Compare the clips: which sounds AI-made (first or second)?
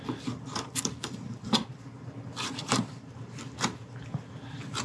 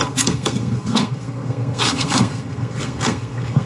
second